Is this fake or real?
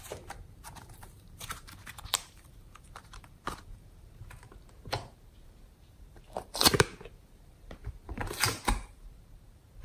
fake